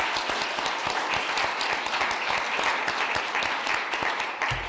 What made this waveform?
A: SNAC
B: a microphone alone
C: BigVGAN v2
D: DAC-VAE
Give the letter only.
B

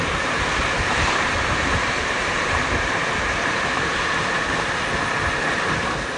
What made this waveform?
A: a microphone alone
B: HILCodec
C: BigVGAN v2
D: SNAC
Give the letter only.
C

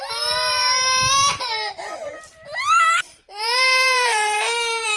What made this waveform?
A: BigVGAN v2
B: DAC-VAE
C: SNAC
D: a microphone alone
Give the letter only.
A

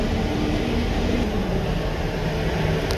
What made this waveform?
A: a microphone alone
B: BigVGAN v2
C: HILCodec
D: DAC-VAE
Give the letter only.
A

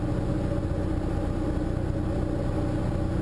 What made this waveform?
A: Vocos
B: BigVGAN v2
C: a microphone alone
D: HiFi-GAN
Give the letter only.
C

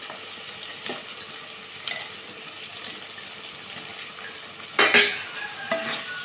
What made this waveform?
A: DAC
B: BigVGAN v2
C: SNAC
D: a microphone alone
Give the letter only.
D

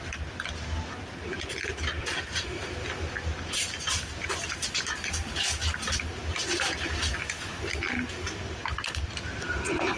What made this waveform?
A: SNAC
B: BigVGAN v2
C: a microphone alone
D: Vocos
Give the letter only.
C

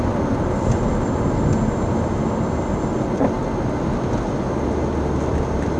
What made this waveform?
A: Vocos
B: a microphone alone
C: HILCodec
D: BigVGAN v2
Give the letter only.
B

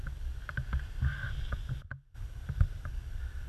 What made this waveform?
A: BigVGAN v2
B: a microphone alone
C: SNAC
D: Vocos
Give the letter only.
B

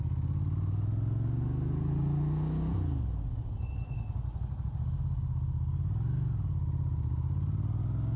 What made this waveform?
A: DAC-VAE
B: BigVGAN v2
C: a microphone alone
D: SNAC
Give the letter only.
C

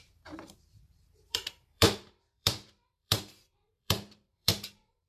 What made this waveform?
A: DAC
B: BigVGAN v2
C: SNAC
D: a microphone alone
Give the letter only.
B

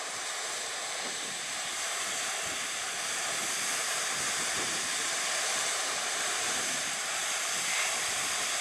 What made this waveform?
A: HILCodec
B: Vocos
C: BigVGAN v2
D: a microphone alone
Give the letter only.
C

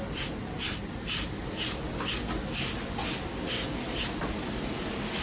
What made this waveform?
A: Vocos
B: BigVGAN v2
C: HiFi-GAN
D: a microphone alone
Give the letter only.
D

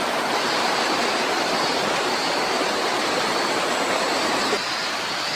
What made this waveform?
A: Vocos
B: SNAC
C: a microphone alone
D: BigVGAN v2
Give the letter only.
D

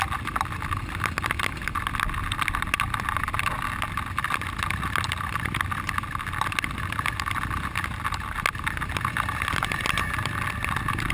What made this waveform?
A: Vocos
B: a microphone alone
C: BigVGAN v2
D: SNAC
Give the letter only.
B